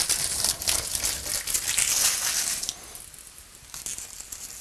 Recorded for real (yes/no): yes